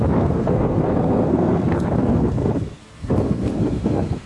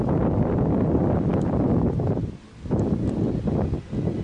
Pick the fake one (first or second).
first